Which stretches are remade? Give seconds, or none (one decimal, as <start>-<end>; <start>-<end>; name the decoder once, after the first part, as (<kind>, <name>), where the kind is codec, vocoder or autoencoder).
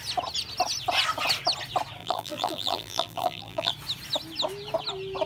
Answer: 2.0-3.7 (vocoder, BigVGAN v2)